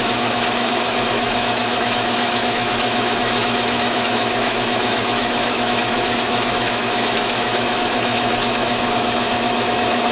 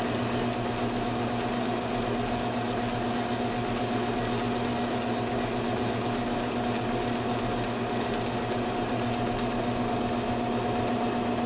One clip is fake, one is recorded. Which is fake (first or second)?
first